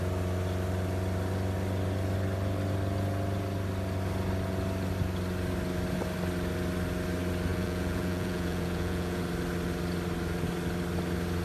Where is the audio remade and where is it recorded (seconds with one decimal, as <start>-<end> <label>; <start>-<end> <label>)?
0.0-7.5 recorded; 7.5-9.2 remade; 9.2-11.4 recorded